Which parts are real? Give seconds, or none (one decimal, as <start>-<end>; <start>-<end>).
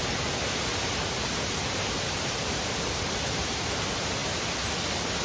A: 0.0-0.7; 3.8-5.2